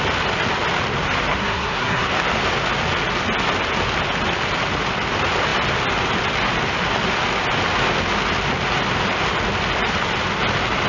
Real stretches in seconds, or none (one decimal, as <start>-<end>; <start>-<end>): 0.0-1.3; 2.1-10.9